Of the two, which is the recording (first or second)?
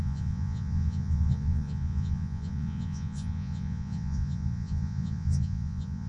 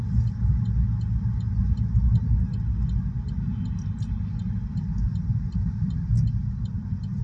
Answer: second